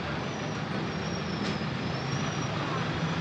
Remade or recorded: recorded